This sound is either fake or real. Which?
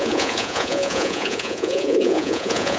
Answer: fake